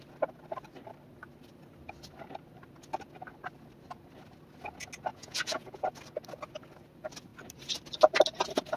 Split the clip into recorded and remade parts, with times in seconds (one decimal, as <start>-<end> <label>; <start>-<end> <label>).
0.0-5.1 recorded; 5.1-5.9 remade; 5.9-8.8 recorded